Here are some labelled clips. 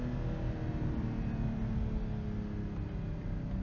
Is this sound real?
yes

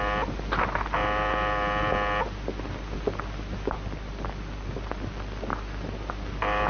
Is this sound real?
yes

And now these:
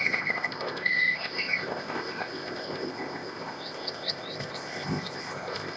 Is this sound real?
no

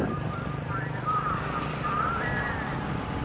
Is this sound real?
yes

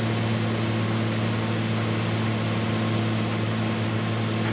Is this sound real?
yes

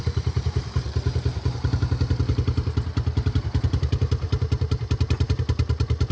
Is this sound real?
yes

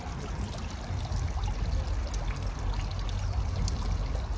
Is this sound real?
yes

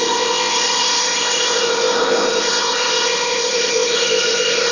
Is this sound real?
no